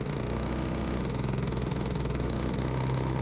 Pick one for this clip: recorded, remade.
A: remade